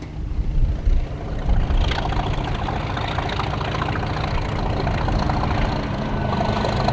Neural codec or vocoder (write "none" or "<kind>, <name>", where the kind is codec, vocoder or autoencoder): none